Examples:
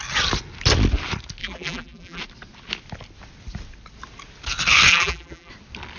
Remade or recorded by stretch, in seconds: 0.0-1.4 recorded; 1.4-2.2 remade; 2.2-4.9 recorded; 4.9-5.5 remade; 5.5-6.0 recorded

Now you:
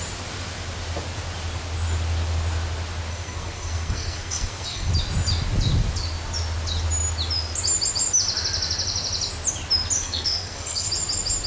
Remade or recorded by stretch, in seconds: 0.0-3.1 recorded; 3.1-4.9 remade; 4.9-10.0 recorded; 10.0-10.9 remade; 10.9-11.5 recorded

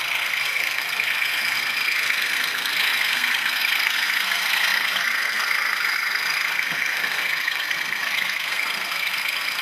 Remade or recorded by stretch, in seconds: 0.0-9.6 remade

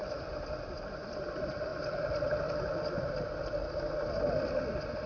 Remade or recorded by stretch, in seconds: 0.0-5.1 recorded

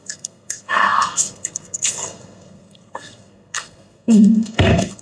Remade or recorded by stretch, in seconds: 0.0-5.0 remade

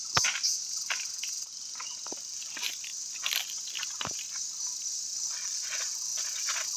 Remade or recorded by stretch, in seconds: 0.0-6.8 recorded

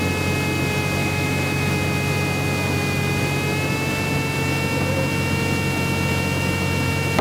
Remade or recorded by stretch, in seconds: 0.0-1.0 recorded; 1.0-1.7 remade; 1.7-7.2 recorded

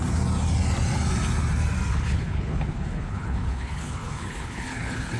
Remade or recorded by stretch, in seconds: 0.0-1.9 recorded; 1.9-5.2 remade